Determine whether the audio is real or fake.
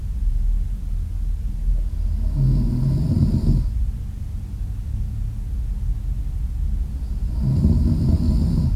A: real